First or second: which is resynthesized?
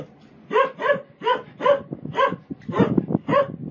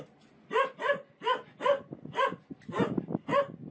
first